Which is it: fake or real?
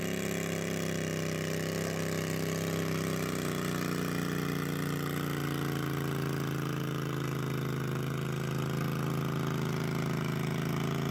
real